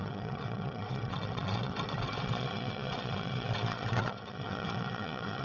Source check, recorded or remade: remade